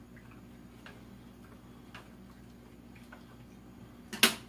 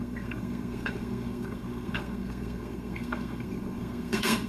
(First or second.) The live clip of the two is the first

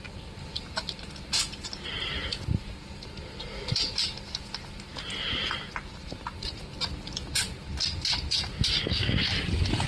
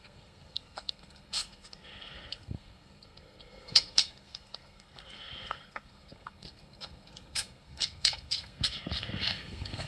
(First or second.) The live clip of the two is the first